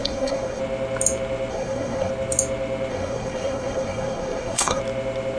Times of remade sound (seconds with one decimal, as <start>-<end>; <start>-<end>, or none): 0.0-0.6; 1.5-2.1; 2.9-4.8